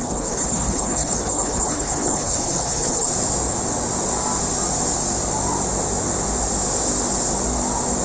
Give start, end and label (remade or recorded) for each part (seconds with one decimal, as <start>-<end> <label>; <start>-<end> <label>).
0.0-3.1 remade; 3.1-8.0 recorded